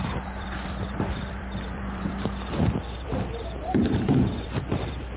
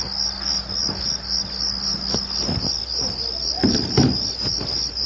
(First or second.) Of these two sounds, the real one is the second